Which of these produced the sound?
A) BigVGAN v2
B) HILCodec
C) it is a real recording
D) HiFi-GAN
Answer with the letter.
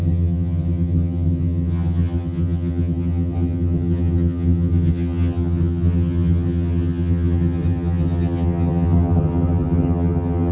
D